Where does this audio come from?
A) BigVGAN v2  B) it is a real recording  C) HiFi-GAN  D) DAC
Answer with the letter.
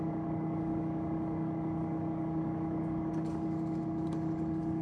D